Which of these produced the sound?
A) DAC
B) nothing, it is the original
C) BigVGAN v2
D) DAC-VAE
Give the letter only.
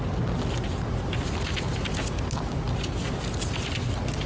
B